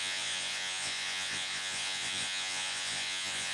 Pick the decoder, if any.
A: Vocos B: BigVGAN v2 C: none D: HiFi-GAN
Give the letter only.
A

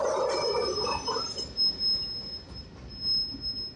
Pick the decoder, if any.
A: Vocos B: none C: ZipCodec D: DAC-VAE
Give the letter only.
B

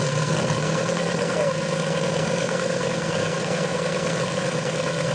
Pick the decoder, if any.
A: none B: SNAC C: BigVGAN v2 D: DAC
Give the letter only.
B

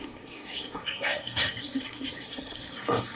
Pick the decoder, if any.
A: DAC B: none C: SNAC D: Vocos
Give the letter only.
C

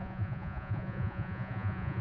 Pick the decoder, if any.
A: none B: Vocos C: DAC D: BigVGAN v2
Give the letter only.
B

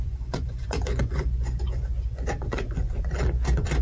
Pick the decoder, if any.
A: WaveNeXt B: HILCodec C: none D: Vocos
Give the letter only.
D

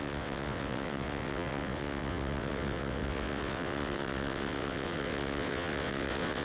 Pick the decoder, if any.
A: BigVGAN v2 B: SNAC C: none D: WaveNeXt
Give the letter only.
D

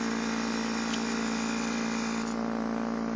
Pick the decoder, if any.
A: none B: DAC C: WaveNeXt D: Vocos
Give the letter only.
A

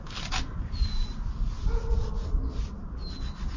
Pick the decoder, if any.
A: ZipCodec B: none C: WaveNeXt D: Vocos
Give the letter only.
B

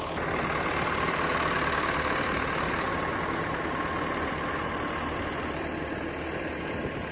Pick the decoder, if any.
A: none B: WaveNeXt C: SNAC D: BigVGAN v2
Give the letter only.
A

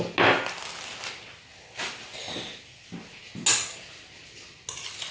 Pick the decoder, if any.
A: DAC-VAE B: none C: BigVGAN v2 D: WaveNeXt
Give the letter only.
B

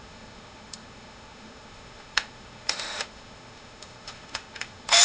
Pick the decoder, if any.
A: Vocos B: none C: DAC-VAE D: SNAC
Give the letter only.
C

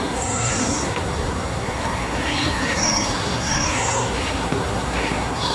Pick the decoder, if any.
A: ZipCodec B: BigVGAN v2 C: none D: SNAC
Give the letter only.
D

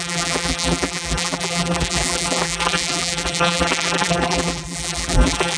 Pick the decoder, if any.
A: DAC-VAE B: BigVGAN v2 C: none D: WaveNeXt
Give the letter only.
B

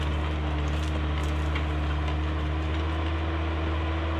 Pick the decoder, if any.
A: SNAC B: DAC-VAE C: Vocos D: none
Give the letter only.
D